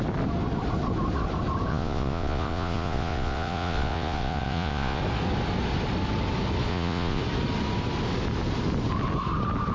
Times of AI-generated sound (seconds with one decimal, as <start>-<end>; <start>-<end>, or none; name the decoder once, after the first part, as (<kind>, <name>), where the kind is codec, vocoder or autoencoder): 1.7-5.0 (vocoder, Vocos); 6.7-7.2